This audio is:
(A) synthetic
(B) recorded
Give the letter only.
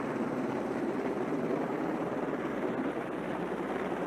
B